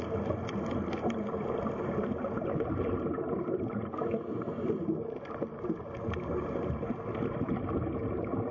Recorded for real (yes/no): yes